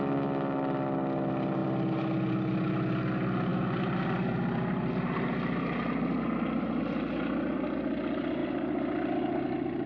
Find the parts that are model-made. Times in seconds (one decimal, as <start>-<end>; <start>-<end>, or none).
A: none